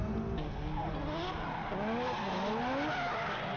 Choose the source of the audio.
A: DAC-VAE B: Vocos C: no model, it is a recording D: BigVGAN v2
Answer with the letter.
C